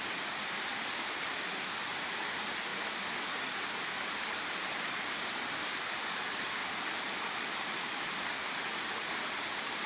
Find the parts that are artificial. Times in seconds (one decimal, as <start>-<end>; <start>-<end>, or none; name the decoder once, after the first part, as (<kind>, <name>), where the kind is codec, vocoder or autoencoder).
0.0-2.7 (vocoder, BigVGAN v2); 3.5-9.9